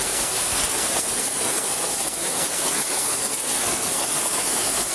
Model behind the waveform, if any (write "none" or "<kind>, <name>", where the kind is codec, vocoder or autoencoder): codec, SNAC